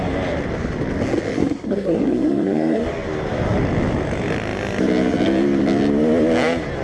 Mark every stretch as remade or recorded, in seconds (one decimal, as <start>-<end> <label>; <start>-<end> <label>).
0.0-1.4 recorded; 1.4-2.8 remade; 2.8-6.8 recorded